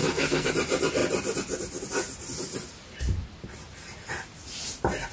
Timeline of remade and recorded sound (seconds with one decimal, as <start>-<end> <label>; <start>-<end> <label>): 0.0-0.5 remade; 0.5-5.1 recorded